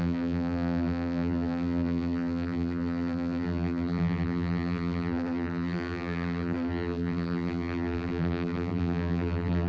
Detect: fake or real fake